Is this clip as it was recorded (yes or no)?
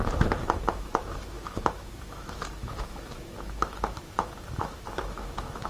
no